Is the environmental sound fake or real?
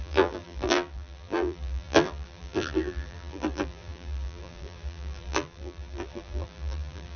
fake